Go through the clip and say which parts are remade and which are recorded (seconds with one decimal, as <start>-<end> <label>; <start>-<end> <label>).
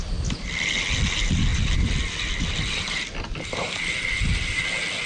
0.0-1.5 recorded; 1.5-4.6 remade; 4.6-5.1 recorded